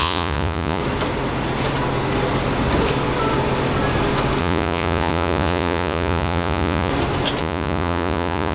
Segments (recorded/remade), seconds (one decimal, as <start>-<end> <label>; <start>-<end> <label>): 0.0-0.8 remade; 0.8-4.4 recorded; 4.4-6.9 remade; 6.9-7.4 recorded; 7.4-8.5 remade